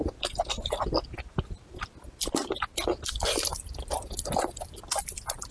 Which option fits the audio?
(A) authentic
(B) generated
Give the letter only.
A